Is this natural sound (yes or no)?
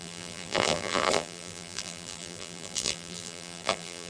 no